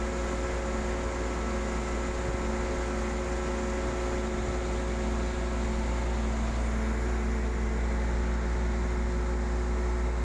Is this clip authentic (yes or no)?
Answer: yes